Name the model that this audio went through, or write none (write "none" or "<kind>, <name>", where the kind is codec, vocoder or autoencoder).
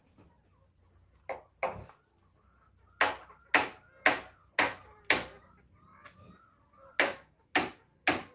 none